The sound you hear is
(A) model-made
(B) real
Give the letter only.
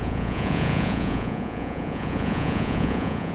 A